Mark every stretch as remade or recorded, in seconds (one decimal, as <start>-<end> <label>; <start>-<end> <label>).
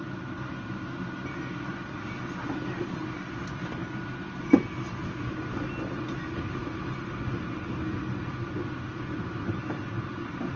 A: 0.0-10.6 recorded